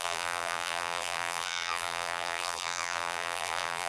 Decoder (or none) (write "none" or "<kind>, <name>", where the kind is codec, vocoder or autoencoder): vocoder, BigVGAN v2